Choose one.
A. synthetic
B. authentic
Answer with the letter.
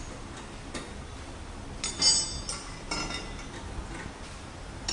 B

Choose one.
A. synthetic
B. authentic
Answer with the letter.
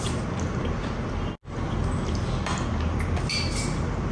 B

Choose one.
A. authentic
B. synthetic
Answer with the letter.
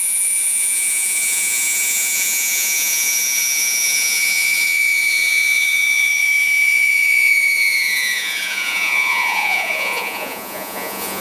B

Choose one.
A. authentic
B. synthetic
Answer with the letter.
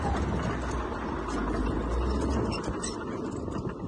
A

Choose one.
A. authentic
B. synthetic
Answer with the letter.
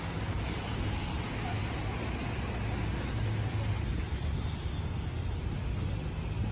A